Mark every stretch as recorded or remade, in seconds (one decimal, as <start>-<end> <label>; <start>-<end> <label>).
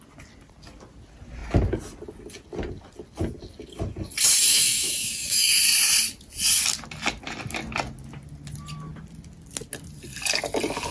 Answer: 0.0-4.5 recorded; 4.5-5.6 remade; 5.6-10.9 recorded